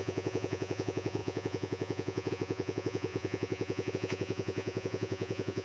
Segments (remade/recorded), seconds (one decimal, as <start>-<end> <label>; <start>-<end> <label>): 0.0-5.6 remade